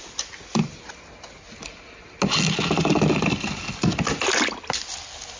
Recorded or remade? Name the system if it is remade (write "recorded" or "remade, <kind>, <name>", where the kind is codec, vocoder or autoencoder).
recorded